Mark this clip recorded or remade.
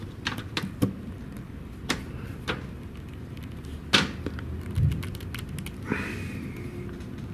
recorded